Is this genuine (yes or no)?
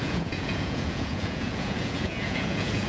no